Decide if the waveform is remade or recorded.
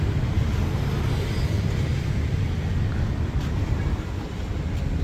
recorded